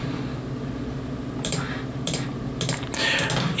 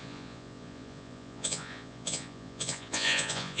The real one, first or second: first